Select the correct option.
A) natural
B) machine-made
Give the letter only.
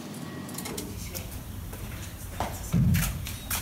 B